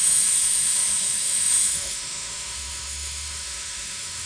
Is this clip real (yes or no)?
no